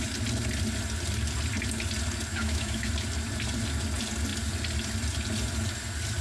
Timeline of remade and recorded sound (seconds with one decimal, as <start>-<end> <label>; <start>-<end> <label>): 0.0-2.3 recorded; 2.3-2.9 remade; 2.9-6.2 recorded

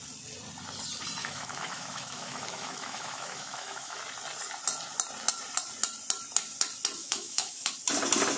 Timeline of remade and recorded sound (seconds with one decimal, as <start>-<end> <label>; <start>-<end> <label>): 0.0-1.2 recorded; 1.2-4.0 remade; 4.0-7.0 recorded; 7.0-7.7 remade; 7.7-8.4 recorded

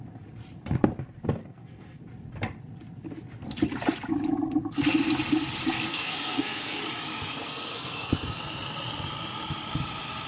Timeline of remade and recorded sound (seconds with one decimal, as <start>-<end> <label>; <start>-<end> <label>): 0.0-1.4 recorded; 1.4-2.0 remade; 2.0-5.9 recorded; 5.9-6.8 remade; 6.8-7.4 recorded; 7.4-8.4 remade; 8.4-10.3 recorded